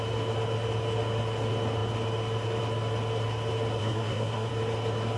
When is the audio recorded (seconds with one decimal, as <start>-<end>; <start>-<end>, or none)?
0.0-3.8; 4.5-5.2